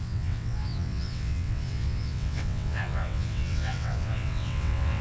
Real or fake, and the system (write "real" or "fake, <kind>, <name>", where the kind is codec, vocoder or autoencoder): fake, vocoder, WaveNeXt